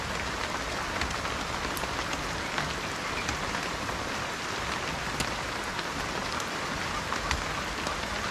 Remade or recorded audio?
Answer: recorded